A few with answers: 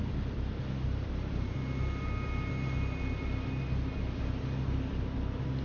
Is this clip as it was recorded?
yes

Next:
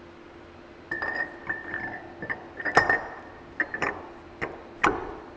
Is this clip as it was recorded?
yes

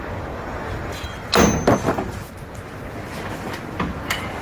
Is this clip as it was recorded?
yes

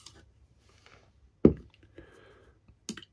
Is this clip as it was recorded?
yes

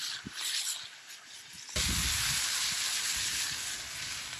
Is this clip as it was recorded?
yes